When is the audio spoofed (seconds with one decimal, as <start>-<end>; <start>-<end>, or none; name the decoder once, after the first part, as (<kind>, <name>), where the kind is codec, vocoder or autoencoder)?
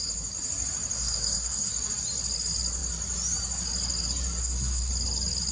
0.9-1.7 (codec, SNAC); 4.4-4.9